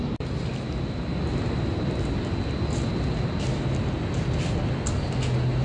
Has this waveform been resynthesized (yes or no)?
no